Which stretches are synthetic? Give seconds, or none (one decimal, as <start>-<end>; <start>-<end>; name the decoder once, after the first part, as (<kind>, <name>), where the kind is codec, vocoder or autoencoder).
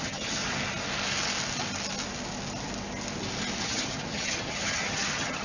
0.0-0.4 (vocoder, HiFi-GAN); 3.6-5.4